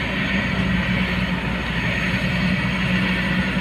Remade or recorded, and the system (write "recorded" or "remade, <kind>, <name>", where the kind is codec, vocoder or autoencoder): recorded